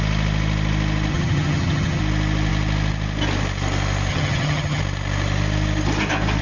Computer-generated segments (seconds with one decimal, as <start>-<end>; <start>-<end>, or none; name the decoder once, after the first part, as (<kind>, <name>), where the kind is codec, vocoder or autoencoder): 1.1-2.0 (vocoder, HiFi-GAN); 4.1-4.8